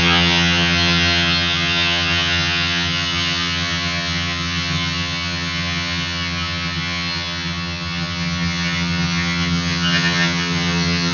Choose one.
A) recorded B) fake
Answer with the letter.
B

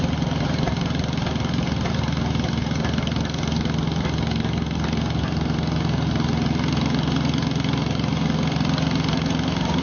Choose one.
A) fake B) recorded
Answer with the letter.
B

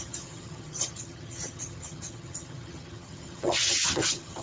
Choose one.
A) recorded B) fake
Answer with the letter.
B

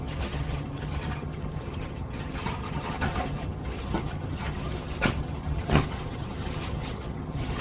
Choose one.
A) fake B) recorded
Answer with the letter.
A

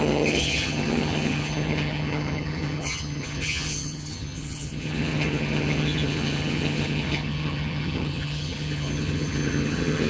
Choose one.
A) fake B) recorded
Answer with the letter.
A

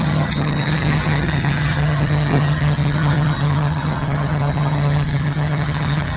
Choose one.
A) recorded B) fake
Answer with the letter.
B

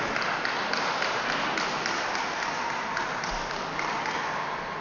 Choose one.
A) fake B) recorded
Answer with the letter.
B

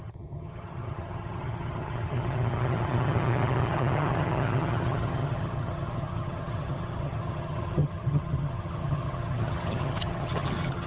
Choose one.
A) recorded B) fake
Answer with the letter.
B